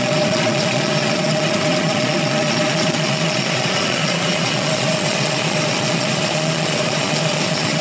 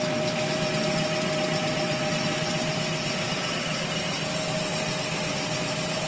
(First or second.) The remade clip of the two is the first